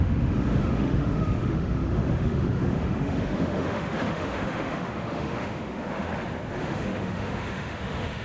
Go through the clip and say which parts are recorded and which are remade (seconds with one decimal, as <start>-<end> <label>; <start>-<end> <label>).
0.0-6.1 remade; 6.1-6.6 recorded; 6.6-8.2 remade